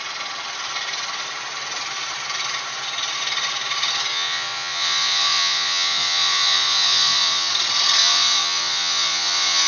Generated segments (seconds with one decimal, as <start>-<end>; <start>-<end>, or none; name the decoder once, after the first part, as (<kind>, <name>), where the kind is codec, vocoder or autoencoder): 4.1-7.5 (vocoder, Vocos); 8.0-9.7

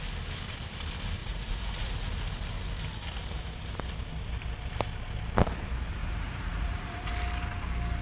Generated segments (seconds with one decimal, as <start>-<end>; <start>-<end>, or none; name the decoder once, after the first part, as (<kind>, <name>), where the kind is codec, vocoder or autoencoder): 1.2-1.9 (vocoder, Vocos); 6.0-7.1